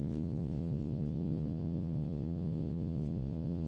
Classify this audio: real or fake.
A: fake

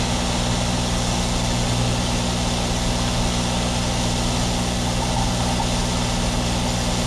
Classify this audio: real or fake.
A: real